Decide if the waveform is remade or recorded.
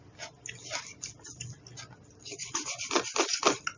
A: recorded